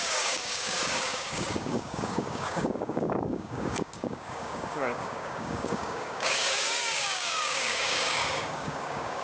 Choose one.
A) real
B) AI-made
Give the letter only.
B